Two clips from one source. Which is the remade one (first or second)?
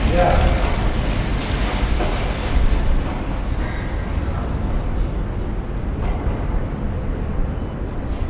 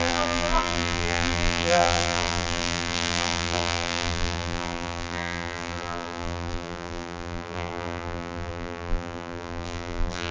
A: second